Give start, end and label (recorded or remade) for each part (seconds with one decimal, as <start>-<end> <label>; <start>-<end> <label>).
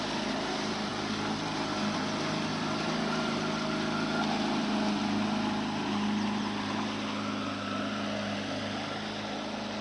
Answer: 0.0-2.5 recorded; 2.5-3.4 remade; 3.4-9.8 recorded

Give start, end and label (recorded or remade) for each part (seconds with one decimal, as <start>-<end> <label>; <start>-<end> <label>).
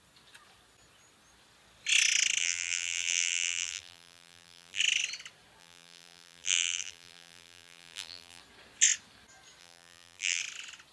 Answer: 0.0-2.4 recorded; 2.4-4.8 remade; 4.8-5.6 recorded; 5.6-8.4 remade; 8.4-9.6 recorded; 9.6-10.4 remade; 10.4-10.9 recorded